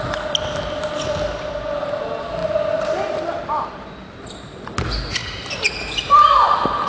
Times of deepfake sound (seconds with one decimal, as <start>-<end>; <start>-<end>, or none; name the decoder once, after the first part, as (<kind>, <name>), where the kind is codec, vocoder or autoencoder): none